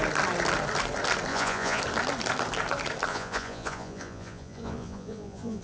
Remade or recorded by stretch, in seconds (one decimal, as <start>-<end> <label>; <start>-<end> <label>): 0.0-1.3 recorded; 1.3-1.8 remade; 1.8-3.1 recorded; 3.1-5.6 remade